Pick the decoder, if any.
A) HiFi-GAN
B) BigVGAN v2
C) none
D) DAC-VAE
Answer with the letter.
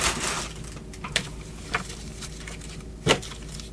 C